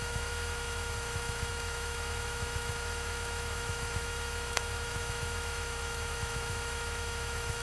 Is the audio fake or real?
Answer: fake